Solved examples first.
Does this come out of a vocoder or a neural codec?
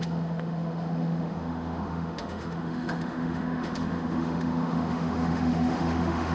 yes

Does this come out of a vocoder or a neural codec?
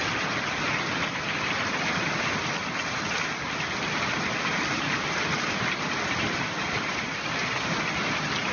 no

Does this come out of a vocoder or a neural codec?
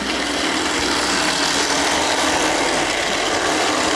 no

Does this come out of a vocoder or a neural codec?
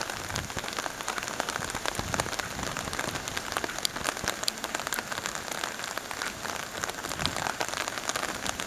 no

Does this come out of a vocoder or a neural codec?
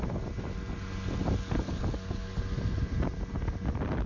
no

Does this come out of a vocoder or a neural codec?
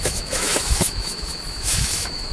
yes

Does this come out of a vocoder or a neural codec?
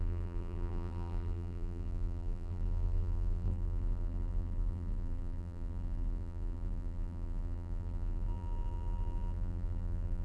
yes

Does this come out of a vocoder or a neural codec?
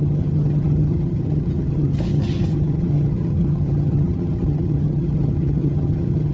yes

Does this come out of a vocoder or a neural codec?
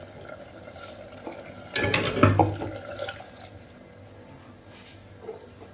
no